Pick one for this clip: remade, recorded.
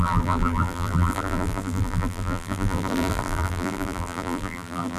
remade